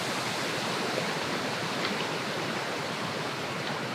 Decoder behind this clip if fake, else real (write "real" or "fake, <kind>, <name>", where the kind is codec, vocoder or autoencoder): real